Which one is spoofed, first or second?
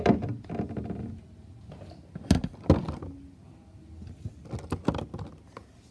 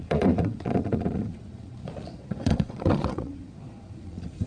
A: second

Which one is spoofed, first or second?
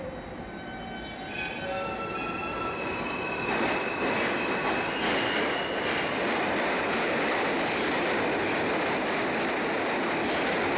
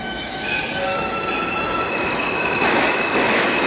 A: second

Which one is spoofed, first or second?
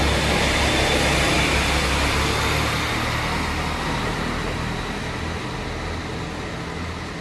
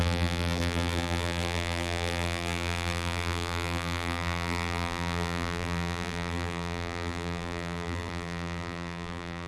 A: second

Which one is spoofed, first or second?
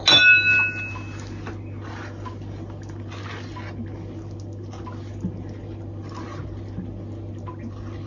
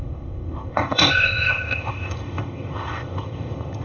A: second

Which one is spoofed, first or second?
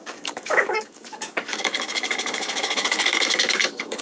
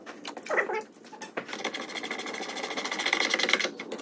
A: first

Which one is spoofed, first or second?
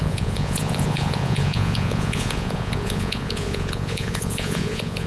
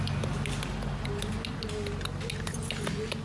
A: first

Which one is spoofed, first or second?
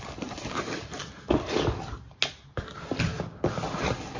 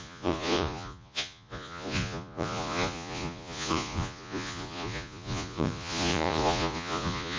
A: second